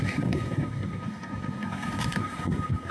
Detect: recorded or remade remade